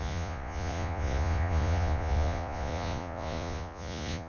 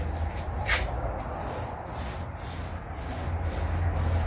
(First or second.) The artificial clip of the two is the first